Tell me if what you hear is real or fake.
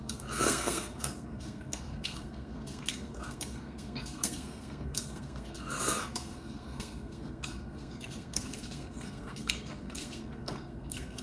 fake